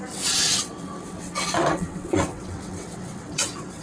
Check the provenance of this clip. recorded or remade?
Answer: remade